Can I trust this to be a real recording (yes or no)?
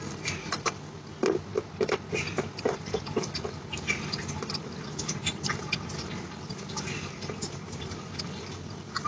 yes